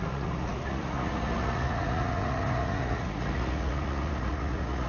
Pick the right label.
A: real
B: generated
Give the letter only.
B